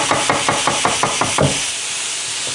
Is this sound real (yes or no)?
yes